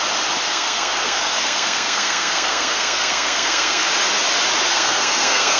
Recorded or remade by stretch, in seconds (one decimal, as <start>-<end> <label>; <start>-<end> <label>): 0.0-0.5 recorded; 0.5-3.9 remade; 3.9-4.7 recorded; 4.7-5.6 remade